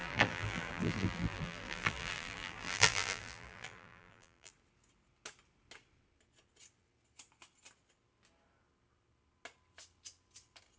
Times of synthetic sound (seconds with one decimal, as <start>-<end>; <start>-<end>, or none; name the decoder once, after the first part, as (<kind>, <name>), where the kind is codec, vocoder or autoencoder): 0.0-4.5 (vocoder, BigVGAN v2)